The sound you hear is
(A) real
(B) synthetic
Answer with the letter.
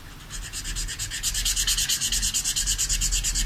A